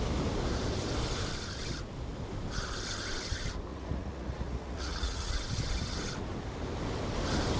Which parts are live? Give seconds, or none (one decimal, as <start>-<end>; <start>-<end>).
0.0-3.7; 5.3-7.6